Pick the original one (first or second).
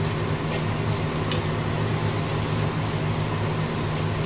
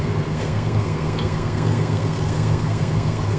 first